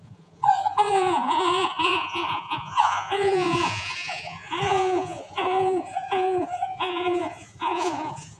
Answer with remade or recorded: remade